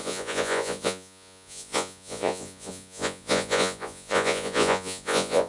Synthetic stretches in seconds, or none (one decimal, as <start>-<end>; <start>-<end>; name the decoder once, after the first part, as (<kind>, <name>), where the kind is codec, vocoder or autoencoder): 0.0-5.5 (vocoder, Vocos)